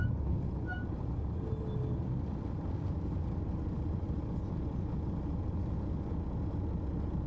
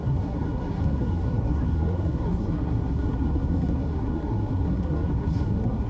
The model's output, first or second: second